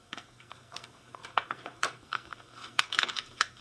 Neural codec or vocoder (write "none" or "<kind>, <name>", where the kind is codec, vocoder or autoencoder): codec, SNAC